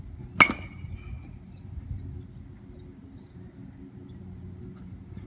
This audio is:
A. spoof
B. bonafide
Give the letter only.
B